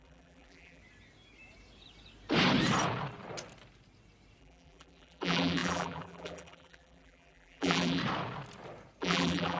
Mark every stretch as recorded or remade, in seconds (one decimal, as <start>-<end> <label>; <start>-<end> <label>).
0.0-0.8 remade; 0.8-4.4 recorded; 4.4-8.0 remade; 8.0-9.0 recorded; 9.0-9.6 remade